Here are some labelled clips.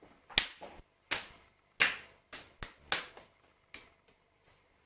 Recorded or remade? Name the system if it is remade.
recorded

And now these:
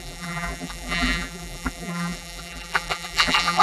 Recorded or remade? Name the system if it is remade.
remade, vocoder, BigVGAN v2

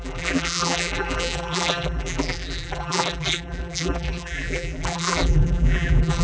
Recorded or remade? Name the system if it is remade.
remade, vocoder, BigVGAN v2